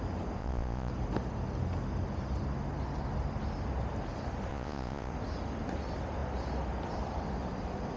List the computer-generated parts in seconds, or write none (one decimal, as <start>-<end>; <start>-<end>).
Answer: 0.4-0.9; 4.5-5.1

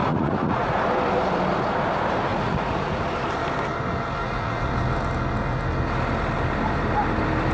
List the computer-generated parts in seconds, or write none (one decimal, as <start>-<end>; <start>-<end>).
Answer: 0.0-0.8; 2.3-3.0; 4.2-4.7

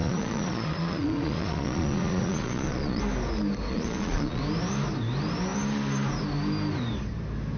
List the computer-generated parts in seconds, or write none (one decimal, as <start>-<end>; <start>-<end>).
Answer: 0.0-3.0; 3.7-4.4

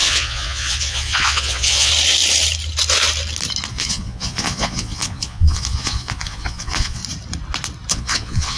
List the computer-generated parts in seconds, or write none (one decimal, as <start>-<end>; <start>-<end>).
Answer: 0.0-1.9; 3.7-7.0; 7.9-8.6

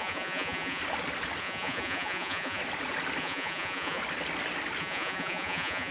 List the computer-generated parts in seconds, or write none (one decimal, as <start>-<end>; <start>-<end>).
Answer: 0.0-0.8; 1.4-2.6; 3.2-4.0; 4.8-5.9